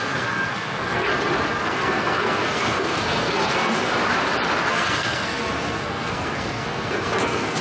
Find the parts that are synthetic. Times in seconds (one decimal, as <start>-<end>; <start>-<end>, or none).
0.0-1.1; 1.6-3.9; 4.7-7.6